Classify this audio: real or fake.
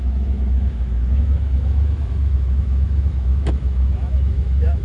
fake